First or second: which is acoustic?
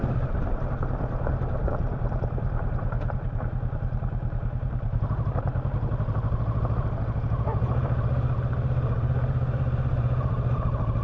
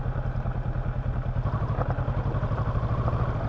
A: second